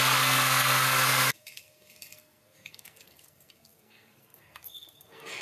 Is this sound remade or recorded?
remade